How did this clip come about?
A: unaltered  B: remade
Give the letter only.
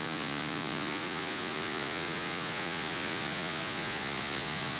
B